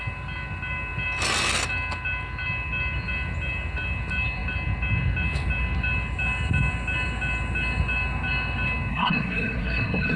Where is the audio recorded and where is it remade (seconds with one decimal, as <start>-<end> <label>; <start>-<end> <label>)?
0.0-8.9 recorded; 8.9-10.2 remade